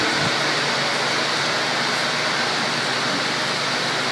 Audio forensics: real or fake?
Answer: real